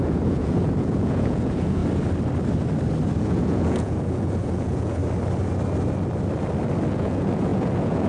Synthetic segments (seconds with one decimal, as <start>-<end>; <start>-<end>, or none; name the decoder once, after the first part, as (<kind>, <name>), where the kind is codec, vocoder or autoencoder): 0.0-1.8 (vocoder, Vocos); 3.2-5.0; 6.9-8.1